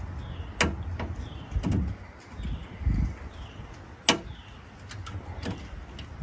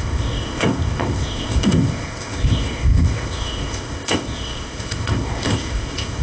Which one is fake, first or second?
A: second